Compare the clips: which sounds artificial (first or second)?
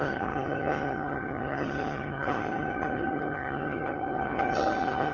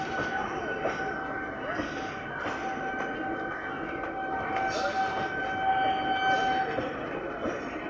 first